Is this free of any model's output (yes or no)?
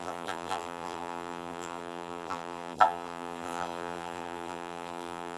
no